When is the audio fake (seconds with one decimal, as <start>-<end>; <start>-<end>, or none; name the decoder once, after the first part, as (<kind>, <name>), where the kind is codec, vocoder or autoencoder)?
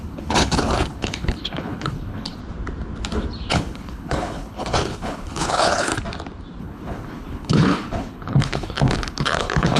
0.0-2.4 (codec, HILCodec); 3.5-5.9; 6.6-9.8